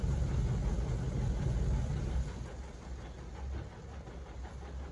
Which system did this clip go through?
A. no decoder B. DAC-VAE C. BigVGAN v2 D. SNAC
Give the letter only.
A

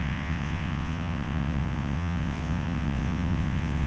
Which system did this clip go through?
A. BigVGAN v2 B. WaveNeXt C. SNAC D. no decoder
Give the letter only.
B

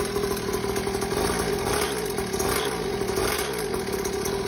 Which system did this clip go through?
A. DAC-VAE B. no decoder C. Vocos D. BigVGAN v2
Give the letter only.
B